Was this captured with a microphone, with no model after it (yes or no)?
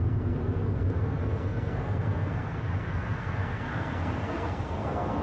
no